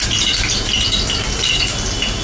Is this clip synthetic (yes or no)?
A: yes